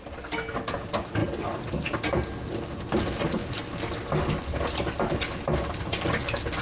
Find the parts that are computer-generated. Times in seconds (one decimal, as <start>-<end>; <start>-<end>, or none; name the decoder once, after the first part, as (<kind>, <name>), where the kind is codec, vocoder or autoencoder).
none